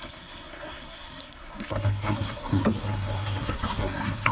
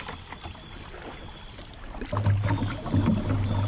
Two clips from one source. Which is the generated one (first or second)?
first